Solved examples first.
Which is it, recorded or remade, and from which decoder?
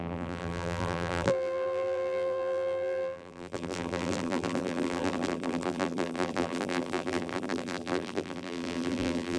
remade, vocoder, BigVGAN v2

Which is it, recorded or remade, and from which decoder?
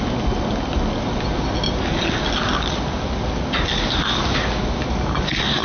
recorded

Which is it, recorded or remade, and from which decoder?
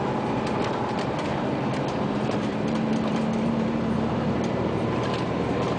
remade, vocoder, BigVGAN v2